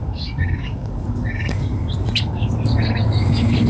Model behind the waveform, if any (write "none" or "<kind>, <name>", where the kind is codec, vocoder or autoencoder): codec, DAC